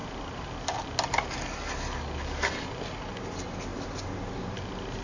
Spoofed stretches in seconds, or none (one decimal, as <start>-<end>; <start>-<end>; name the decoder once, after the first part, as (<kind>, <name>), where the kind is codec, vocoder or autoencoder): none